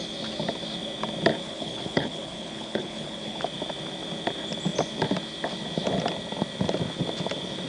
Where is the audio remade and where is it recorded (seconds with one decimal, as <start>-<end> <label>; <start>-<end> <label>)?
0.0-1.4 recorded; 1.4-3.4 remade; 3.4-7.7 recorded